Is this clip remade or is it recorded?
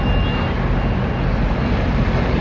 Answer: recorded